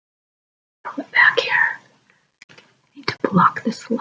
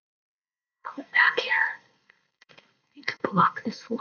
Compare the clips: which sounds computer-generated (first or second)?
second